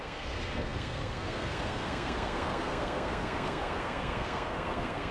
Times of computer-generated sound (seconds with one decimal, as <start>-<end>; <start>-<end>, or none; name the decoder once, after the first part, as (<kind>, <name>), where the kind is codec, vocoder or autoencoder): 0.0-5.1 (codec, SNAC)